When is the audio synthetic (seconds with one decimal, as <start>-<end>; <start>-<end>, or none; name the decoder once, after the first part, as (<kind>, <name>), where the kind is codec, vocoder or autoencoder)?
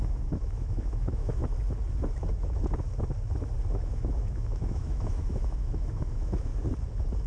0.0-1.4 (autoencoder, DAC-VAE); 3.7-6.5